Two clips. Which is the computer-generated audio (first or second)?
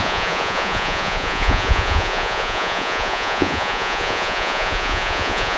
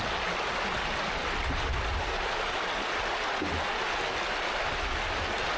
first